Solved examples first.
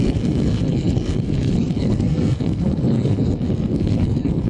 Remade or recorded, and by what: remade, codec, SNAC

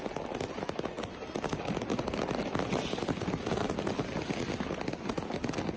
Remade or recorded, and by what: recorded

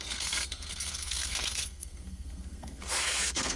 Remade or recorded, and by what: remade, codec, SNAC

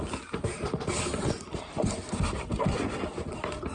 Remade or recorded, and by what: recorded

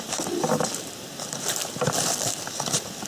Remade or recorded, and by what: recorded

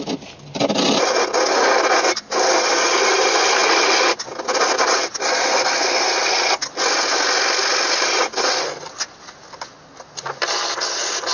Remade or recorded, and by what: recorded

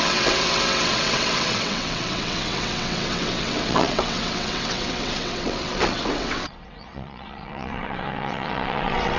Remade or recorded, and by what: remade, vocoder, WaveNeXt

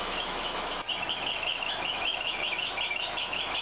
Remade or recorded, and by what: remade, autoencoder, DAC-VAE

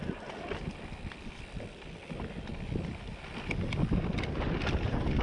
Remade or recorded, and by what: recorded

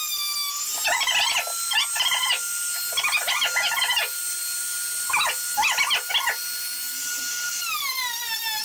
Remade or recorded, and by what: recorded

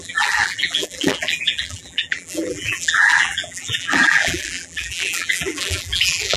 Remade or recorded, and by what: remade, vocoder, BigVGAN v2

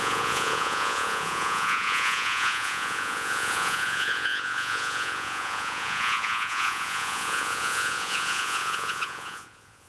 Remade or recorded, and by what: remade, vocoder, Vocos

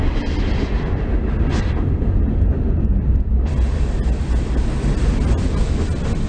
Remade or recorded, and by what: recorded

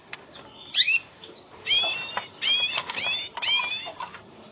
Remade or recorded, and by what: recorded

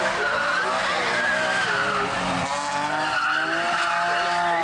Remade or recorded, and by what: recorded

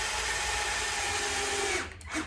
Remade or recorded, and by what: recorded